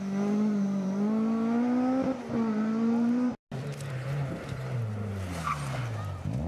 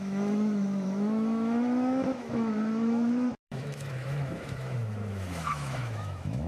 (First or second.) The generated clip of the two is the second